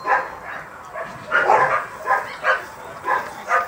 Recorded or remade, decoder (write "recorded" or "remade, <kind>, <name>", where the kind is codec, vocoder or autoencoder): recorded